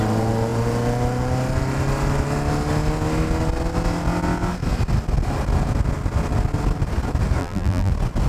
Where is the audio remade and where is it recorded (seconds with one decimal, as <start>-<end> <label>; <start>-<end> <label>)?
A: 0.0-7.4 recorded; 7.4-7.9 remade; 7.9-8.3 recorded